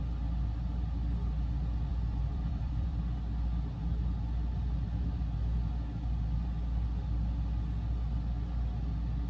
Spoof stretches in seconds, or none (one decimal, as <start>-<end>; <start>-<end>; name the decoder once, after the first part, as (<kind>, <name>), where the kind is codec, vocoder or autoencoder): 1.9-3.0 (vocoder, BigVGAN v2)